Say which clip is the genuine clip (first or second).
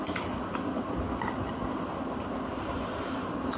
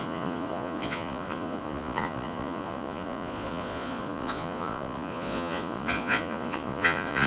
first